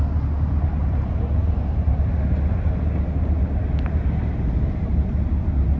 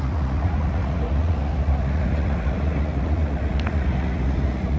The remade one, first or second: second